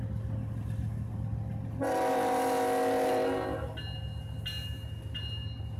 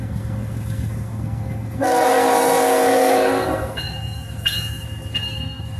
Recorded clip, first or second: first